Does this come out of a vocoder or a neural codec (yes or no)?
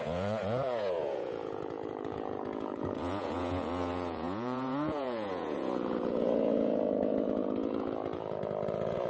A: yes